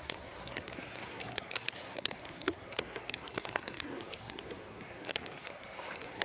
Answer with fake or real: fake